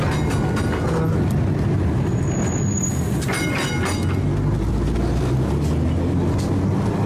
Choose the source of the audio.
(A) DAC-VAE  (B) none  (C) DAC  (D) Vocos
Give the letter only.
B